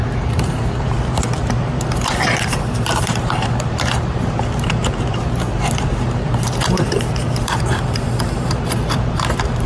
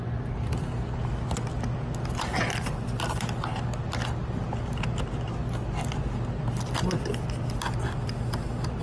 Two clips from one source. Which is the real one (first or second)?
second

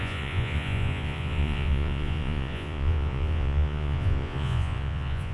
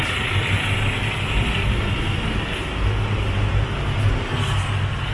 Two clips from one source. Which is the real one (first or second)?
second